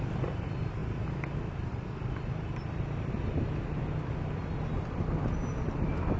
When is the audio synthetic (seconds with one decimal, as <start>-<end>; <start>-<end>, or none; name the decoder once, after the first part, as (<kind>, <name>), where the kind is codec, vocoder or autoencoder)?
none